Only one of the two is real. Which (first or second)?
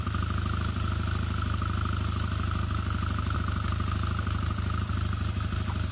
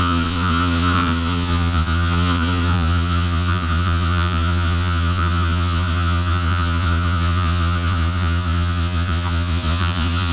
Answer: first